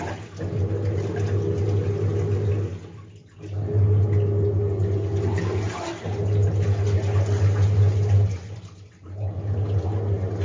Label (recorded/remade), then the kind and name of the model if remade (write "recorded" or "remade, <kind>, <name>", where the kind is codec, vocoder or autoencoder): recorded